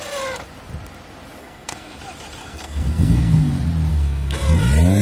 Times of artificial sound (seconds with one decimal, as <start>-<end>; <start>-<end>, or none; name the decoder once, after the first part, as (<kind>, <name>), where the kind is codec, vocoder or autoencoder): 1.4-2.0 (codec, SNAC); 2.4-3.5; 3.9-4.6